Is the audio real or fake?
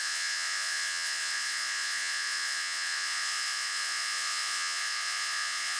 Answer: fake